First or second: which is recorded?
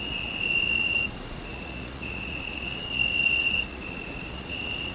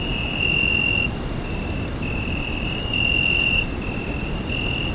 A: second